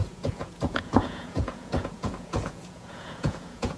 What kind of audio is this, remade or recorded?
remade